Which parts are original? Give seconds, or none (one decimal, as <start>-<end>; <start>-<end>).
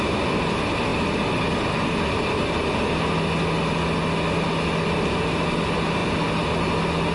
0.0-7.1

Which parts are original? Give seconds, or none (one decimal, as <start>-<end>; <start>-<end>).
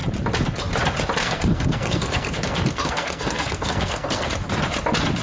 0.0-1.2; 4.3-5.2